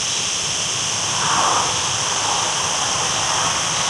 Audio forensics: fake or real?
real